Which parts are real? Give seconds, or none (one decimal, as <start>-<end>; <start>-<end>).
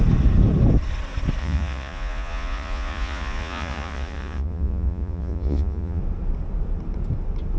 0.0-1.4; 6.0-7.6